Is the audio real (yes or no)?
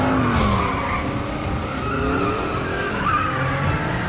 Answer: yes